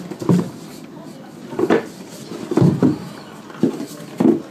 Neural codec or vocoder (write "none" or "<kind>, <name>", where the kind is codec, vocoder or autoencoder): none